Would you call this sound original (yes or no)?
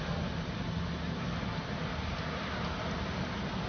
yes